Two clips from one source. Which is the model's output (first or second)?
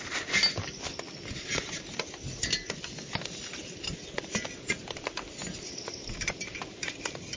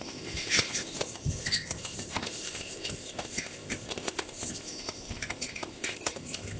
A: second